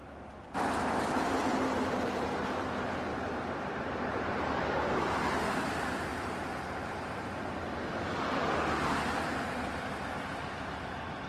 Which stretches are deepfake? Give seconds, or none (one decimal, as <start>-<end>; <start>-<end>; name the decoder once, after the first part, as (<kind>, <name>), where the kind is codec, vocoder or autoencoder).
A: 1.5-2.3 (vocoder, BigVGAN v2); 3.1-5.2; 6.1-7.1